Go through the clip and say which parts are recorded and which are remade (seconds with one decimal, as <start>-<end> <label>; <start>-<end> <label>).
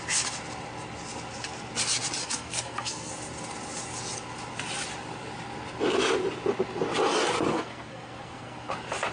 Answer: 0.0-2.2 recorded; 2.2-3.1 remade; 3.1-7.5 recorded; 7.5-8.7 remade; 8.7-9.1 recorded